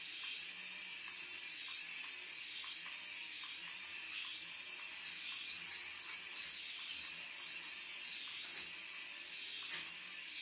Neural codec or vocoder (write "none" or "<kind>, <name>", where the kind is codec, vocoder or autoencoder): none